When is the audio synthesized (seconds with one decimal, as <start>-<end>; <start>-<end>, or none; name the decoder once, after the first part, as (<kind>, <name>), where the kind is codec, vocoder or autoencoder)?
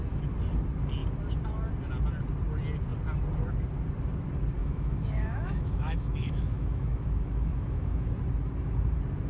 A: 4.6-8.1 (autoencoder, DAC-VAE)